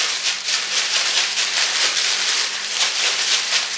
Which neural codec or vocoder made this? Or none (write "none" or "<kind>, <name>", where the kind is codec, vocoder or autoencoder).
vocoder, BigVGAN v2